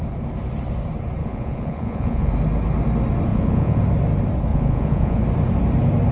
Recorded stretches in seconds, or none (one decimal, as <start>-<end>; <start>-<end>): 0.0-1.2; 2.3-3.3; 3.8-4.5; 5.2-6.1